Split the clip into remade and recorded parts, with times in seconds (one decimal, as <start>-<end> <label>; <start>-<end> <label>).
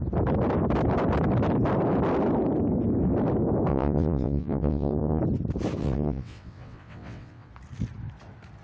0.0-3.7 recorded; 3.7-5.2 remade; 5.2-5.8 recorded; 5.8-7.5 remade; 7.5-8.6 recorded